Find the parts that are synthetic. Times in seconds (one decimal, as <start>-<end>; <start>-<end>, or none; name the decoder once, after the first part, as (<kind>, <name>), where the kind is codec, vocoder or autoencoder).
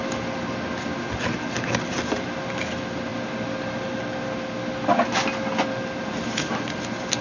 none